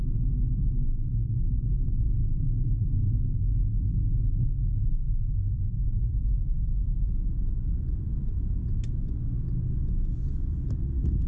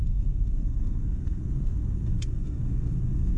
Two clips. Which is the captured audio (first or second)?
first